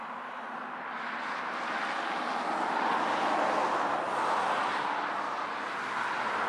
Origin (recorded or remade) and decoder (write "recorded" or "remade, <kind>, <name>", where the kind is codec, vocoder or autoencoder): recorded